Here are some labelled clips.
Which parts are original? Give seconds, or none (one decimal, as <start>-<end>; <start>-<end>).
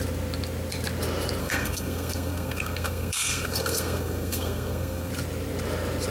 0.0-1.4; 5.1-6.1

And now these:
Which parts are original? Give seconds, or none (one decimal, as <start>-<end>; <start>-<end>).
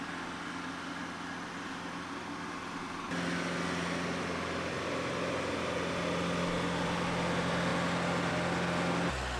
0.0-9.4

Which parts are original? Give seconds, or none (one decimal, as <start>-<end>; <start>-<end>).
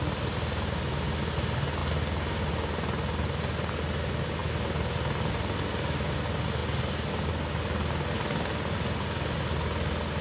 0.0-10.2